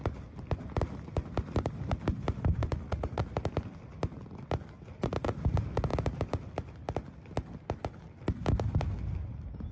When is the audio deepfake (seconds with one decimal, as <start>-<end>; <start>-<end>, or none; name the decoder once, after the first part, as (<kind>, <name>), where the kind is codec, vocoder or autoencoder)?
2.5-3.2 (vocoder, Vocos)